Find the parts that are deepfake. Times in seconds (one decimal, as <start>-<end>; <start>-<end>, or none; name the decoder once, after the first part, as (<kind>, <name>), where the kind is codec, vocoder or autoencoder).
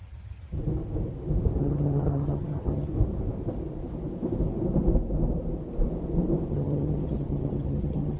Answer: 0.0-0.6 (vocoder, HiFi-GAN); 1.6-2.9; 6.5-8.2